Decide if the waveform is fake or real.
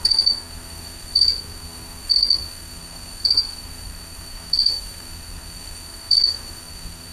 fake